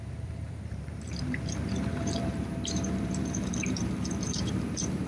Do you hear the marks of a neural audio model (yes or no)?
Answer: yes